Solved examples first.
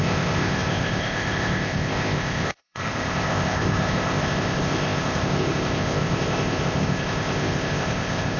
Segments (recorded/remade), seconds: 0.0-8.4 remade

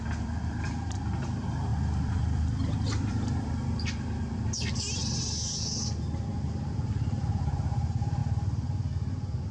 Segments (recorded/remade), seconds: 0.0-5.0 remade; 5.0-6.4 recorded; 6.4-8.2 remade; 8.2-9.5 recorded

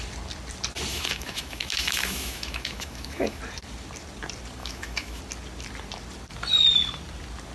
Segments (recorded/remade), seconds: 0.0-0.9 recorded; 0.9-3.4 remade; 3.4-4.6 recorded; 4.6-5.2 remade; 5.2-7.5 recorded

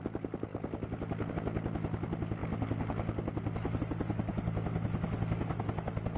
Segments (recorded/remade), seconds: 0.0-6.2 recorded

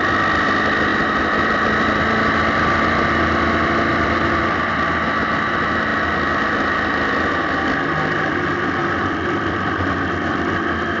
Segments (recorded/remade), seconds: 0.0-0.9 recorded; 0.9-3.0 remade; 3.0-3.9 recorded; 3.9-4.4 remade; 4.4-8.8 recorded; 8.8-10.5 remade; 10.5-11.0 recorded

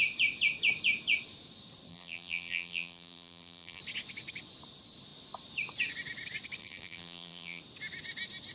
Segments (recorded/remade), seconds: 0.0-1.9 recorded; 1.9-3.8 remade; 3.8-6.6 recorded; 6.6-7.6 remade; 7.6-8.5 recorded

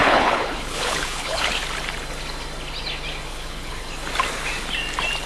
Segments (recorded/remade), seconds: 0.0-1.5 remade; 1.5-3.3 recorded; 3.3-3.9 remade; 3.9-5.3 recorded